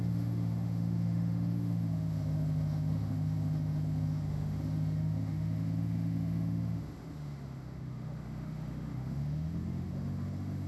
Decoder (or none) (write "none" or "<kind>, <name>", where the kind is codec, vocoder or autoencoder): autoencoder, DAC-VAE